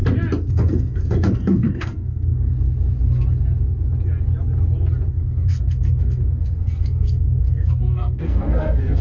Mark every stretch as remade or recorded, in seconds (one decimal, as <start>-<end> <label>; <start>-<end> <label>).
0.0-0.5 recorded; 0.5-2.3 remade; 2.3-5.1 recorded; 5.1-9.0 remade